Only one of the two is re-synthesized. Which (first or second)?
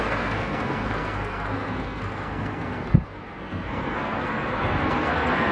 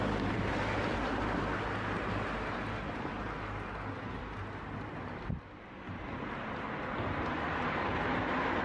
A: first